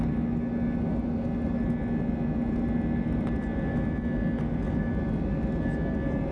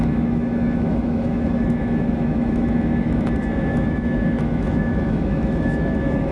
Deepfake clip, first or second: second